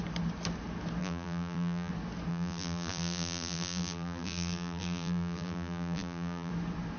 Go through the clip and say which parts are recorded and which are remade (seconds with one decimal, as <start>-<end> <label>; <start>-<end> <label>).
0.0-1.0 recorded; 1.0-1.9 remade; 1.9-2.3 recorded; 2.3-6.5 remade; 6.5-7.0 recorded